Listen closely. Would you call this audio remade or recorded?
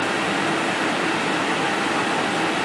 recorded